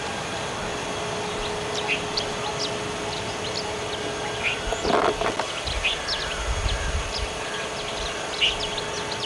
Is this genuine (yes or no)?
yes